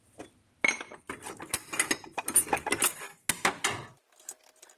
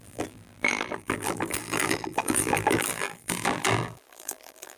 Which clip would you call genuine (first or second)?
first